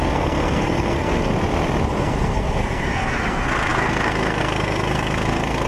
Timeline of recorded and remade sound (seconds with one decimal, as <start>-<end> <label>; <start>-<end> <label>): 0.0-1.3 remade; 1.3-2.0 recorded; 2.0-5.7 remade